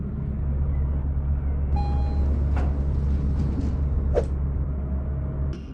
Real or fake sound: real